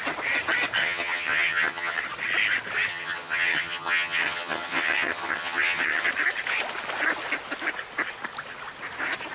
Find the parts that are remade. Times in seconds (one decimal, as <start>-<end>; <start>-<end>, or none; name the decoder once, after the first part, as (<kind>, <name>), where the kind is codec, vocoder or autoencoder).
0.8-2.0 (vocoder, HiFi-GAN); 2.9-6.1